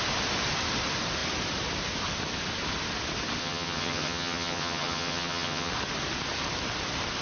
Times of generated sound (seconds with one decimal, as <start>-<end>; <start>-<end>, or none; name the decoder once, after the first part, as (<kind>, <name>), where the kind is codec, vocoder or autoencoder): 3.4-5.7 (vocoder, HiFi-GAN)